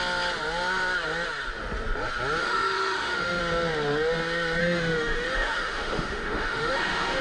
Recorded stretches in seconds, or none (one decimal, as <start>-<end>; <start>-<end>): 0.0-2.4; 3.4-4.6